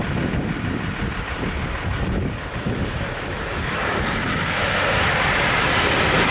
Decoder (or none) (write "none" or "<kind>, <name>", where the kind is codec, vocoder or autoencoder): none